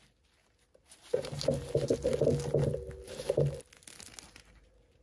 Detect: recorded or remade recorded